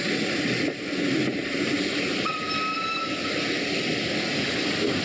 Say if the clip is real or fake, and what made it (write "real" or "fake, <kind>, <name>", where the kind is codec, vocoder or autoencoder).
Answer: real